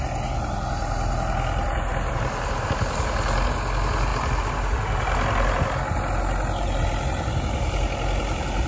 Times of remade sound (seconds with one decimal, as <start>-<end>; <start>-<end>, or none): none